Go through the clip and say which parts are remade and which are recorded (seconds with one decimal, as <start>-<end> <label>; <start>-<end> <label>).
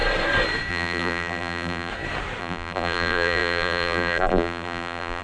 0.0-0.7 recorded; 0.7-1.9 remade; 1.9-2.4 recorded; 2.4-5.2 remade